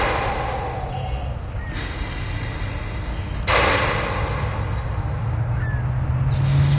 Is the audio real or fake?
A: real